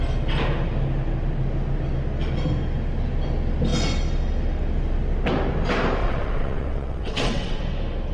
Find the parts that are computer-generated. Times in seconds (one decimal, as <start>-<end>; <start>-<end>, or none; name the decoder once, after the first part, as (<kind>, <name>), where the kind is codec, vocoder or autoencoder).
6.0-7.6 (vocoder, WaveNeXt)